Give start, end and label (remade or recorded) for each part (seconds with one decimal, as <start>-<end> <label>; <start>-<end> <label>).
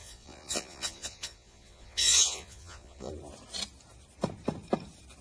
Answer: 0.0-3.1 remade; 3.1-5.2 recorded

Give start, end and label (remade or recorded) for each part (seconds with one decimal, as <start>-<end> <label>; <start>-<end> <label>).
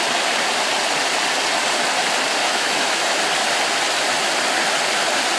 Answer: 0.0-2.4 recorded; 2.4-3.2 remade; 3.2-5.4 recorded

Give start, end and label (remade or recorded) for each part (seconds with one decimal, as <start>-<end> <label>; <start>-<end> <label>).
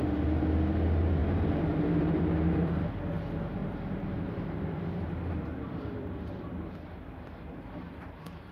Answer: 0.0-1.2 recorded; 1.2-2.2 remade; 2.2-3.6 recorded; 3.6-6.4 remade; 6.4-8.5 recorded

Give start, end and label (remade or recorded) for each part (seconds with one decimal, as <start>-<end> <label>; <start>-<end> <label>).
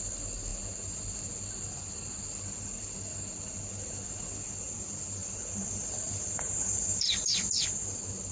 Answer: 0.0-8.3 recorded